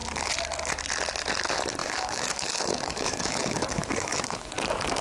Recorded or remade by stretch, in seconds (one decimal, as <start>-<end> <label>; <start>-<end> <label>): 0.0-1.8 recorded; 1.8-4.5 remade; 4.5-5.0 recorded